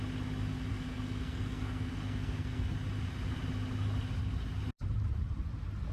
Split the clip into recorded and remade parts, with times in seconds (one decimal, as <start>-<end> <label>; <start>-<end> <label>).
0.0-0.7 recorded; 0.7-2.6 remade; 2.6-5.9 recorded